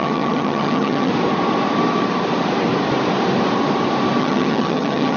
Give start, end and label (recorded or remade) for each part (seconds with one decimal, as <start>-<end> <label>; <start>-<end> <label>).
0.0-1.1 remade; 1.1-4.2 recorded; 4.2-5.2 remade